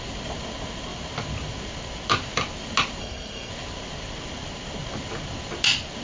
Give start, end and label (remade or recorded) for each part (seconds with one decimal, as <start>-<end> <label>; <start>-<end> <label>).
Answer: 0.0-3.0 recorded; 3.0-3.5 remade; 3.5-6.0 recorded